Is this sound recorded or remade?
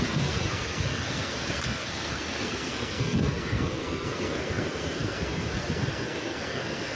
remade